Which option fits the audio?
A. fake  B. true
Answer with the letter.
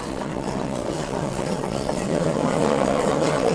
A